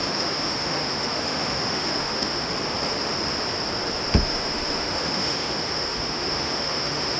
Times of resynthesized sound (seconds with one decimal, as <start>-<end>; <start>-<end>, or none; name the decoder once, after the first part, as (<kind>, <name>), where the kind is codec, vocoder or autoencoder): 0.0-2.5 (autoencoder, DAC-VAE); 4.1-7.2